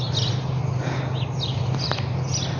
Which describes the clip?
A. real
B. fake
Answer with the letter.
A